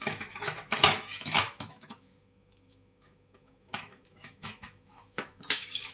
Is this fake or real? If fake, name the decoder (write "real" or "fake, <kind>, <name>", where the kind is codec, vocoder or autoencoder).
fake, autoencoder, DAC-VAE